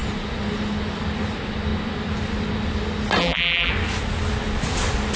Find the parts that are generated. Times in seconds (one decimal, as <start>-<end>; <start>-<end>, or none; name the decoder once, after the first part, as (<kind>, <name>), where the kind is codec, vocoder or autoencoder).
3.2-3.7 (vocoder, BigVGAN v2)